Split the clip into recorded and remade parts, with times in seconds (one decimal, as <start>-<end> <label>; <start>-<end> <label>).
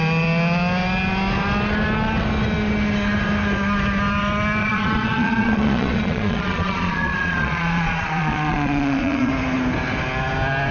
0.0-4.6 recorded; 4.6-9.3 remade; 9.3-10.7 recorded